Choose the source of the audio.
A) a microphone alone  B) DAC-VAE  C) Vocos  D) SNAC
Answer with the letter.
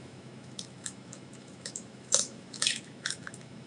B